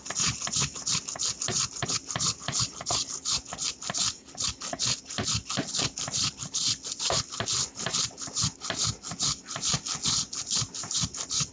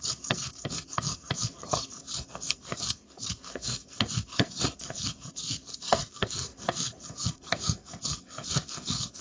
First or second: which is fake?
second